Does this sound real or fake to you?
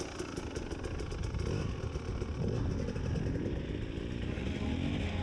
real